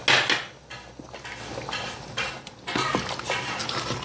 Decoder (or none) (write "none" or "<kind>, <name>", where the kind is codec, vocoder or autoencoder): none